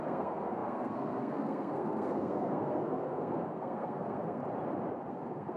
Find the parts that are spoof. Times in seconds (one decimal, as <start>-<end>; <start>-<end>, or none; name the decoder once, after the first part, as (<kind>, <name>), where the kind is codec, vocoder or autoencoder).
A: 0.0-4.4 (codec, SNAC); 5.1-5.6